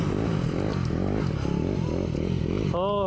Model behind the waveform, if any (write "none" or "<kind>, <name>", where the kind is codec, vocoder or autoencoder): none